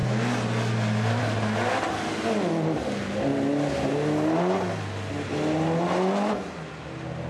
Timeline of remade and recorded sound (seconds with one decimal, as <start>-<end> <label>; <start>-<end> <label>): 0.0-7.3 recorded